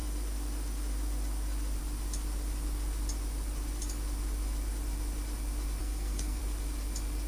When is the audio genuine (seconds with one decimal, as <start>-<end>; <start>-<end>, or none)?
0.0-5.8; 6.4-7.3